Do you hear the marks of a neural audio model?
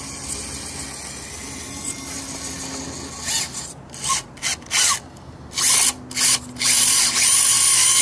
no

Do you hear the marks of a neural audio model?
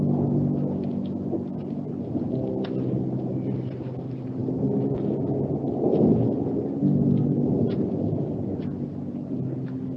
no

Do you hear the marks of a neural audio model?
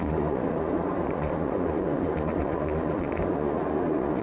yes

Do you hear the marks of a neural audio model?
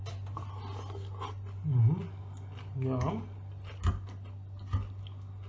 no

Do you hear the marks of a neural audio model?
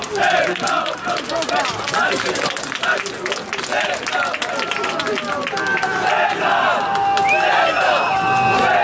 no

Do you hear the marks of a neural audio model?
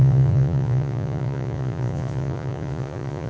yes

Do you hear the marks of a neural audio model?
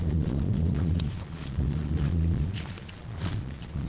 yes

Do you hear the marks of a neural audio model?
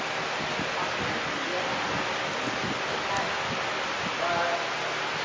no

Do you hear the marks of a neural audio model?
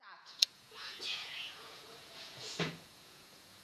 yes